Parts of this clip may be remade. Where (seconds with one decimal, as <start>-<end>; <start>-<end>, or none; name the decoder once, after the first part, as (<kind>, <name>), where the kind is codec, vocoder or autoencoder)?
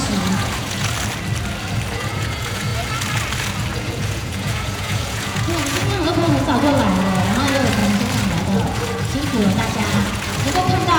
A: 0.0-0.9 (vocoder, Vocos); 1.9-2.7; 3.7-7.8; 8.4-11.0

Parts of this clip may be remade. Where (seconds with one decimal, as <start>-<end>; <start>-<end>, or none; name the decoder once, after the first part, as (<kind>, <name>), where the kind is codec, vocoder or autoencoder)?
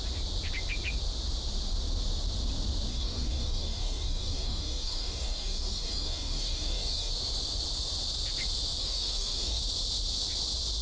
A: 2.9-7.1 (codec, DAC); 8.8-9.6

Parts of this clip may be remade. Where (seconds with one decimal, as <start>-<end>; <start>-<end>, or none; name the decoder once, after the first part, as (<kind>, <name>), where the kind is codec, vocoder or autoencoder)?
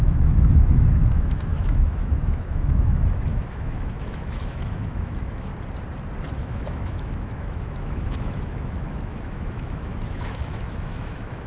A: 0.0-5.5 (autoencoder, DAC-VAE); 6.4-11.5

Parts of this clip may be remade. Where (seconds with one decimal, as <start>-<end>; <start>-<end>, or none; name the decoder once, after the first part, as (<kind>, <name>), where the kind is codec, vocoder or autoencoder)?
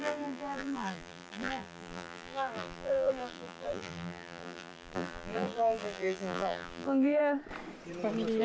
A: 0.0-7.2 (vocoder, BigVGAN v2)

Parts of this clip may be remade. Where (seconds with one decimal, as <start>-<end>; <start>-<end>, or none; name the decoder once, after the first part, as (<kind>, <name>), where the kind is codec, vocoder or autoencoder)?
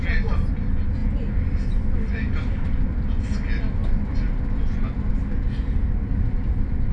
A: 3.8-5.1 (vocoder, BigVGAN v2)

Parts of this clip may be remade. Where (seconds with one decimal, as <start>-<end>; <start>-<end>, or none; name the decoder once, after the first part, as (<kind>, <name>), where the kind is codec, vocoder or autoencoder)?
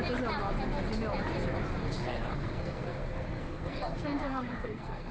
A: 1.8-5.1 (codec, SNAC)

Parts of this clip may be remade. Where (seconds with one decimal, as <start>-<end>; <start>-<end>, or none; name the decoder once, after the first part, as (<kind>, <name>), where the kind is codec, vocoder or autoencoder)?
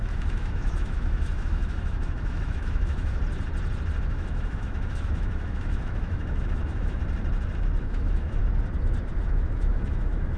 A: 0.0-3.2 (autoencoder, DAC-VAE); 4.0-7.0; 7.8-8.4; 9.2-10.4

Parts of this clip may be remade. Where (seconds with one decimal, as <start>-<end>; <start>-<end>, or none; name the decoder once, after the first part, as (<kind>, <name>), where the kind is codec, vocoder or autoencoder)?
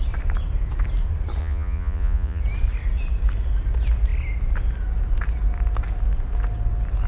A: 1.4-2.4 (vocoder, Vocos)